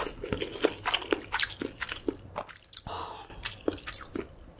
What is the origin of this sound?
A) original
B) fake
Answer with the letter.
A